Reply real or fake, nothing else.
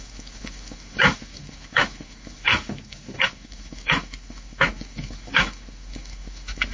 fake